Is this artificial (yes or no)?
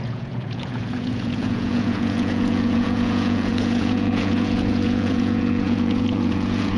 yes